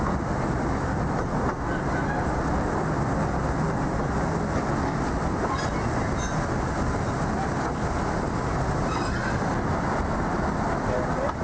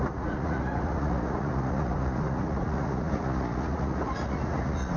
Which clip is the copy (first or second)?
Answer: second